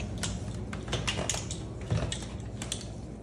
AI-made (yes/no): no